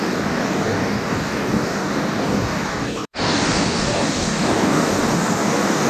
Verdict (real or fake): fake